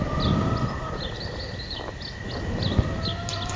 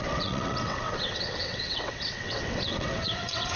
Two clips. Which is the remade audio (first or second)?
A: second